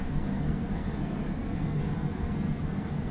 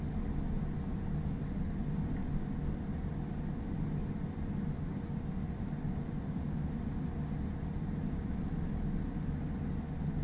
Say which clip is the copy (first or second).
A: first